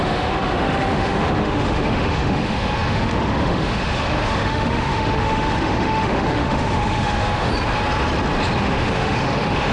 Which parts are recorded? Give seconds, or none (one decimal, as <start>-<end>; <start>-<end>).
7.5-8.6